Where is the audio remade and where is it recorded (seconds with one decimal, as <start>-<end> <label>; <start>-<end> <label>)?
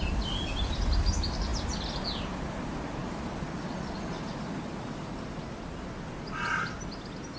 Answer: 0.0-7.4 recorded